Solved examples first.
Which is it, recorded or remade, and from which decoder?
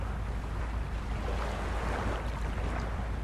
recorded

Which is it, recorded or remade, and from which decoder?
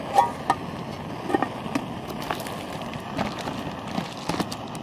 recorded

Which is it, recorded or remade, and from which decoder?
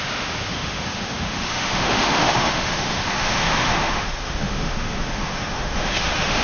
remade, autoencoder, DAC-VAE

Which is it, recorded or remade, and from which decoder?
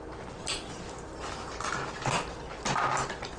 recorded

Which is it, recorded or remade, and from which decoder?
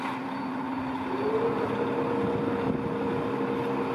recorded